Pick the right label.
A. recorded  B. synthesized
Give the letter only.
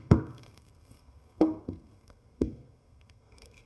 B